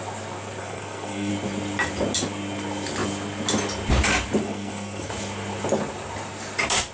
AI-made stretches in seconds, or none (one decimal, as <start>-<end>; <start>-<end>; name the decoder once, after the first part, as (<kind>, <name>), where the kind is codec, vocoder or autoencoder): 0.6-1.3 (codec, SNAC); 4.4-5.1

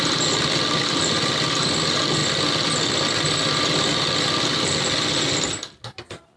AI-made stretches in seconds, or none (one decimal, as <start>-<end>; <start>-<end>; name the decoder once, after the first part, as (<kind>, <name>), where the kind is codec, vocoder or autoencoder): none

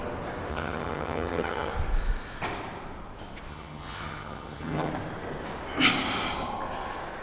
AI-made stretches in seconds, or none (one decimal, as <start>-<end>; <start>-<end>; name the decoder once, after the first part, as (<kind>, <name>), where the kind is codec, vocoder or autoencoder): 0.5-1.7 (vocoder, HiFi-GAN); 3.5-4.9

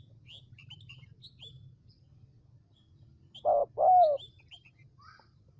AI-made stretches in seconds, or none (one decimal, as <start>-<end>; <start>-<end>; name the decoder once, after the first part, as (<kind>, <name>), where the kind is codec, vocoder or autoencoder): none